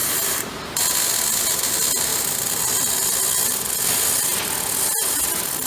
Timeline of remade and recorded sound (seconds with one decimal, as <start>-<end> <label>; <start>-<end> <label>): 0.0-0.8 remade; 0.8-5.7 recorded